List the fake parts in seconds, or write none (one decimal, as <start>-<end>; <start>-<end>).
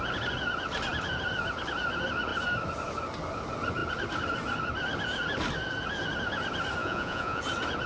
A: 6.8-7.4